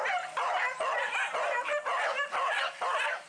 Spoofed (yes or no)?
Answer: no